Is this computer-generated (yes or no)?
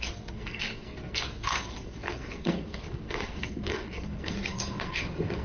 yes